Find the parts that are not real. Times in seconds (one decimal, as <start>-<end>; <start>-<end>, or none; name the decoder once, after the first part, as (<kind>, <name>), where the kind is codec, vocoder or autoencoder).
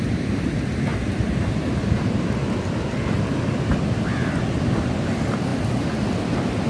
0.0-2.4 (vocoder, BigVGAN v2); 4.7-5.5; 6.1-6.7